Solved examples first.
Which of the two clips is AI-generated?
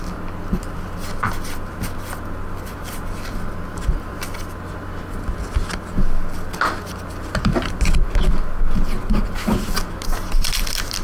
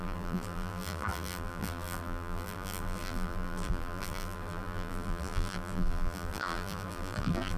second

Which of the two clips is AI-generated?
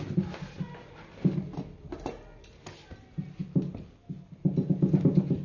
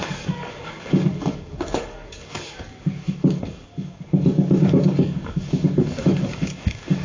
second